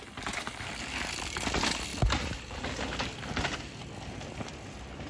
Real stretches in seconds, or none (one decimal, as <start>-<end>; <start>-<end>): 0.0-5.1